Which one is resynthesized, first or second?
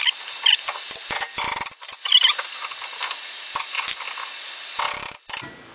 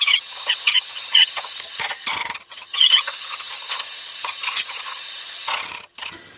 second